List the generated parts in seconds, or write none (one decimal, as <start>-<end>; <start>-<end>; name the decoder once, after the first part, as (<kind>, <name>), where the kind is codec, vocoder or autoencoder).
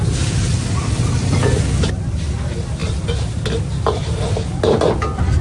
none